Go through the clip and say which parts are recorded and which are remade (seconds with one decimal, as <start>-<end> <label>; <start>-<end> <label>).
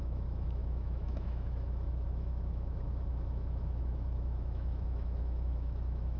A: 0.0-6.2 remade